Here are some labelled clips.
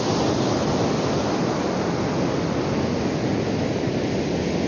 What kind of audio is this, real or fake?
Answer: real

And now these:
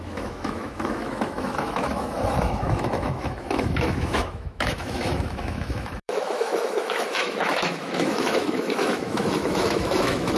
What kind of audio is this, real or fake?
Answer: fake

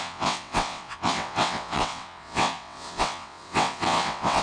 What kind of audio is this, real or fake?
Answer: fake